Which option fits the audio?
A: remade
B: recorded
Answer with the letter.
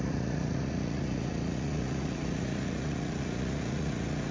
A